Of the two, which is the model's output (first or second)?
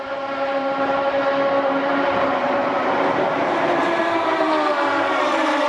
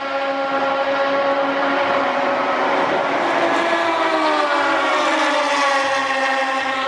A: first